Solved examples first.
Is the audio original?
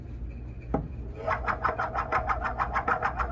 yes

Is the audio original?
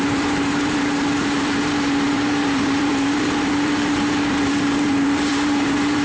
no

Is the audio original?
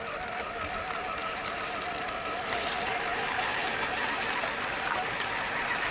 yes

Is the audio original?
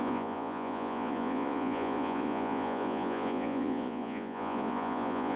no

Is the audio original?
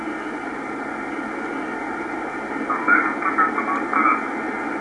yes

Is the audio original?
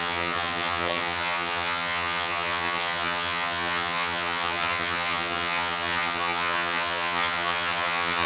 no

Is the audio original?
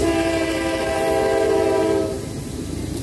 no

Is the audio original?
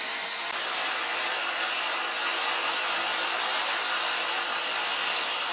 yes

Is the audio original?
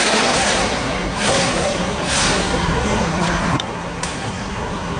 no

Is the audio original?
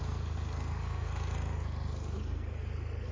no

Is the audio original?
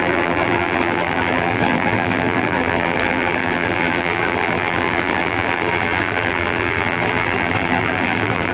no